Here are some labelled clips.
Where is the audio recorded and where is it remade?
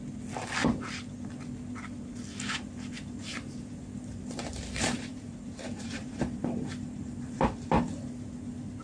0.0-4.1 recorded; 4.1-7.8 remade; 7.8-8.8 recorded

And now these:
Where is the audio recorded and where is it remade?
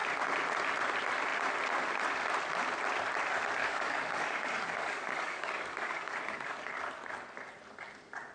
0.0-3.6 recorded; 3.6-6.7 remade; 6.7-8.3 recorded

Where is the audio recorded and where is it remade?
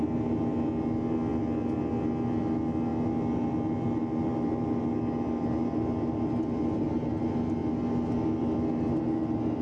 0.0-9.6 recorded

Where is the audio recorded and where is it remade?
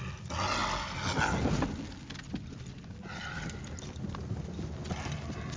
0.0-5.6 recorded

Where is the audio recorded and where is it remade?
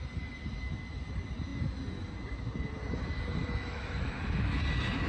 0.0-3.4 recorded; 3.4-4.6 remade; 4.6-5.1 recorded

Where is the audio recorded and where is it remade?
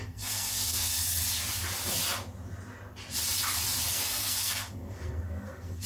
0.0-0.9 remade; 0.9-3.9 recorded; 3.9-5.9 remade